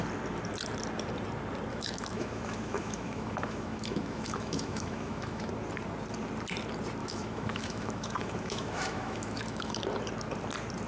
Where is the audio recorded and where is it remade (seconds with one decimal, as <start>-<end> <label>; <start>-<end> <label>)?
0.0-1.7 recorded; 1.7-5.5 remade; 5.5-7.0 recorded; 7.0-9.8 remade; 9.8-10.9 recorded